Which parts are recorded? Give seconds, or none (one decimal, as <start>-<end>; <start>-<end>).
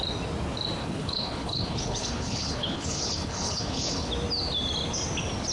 0.0-0.8; 4.1-5.5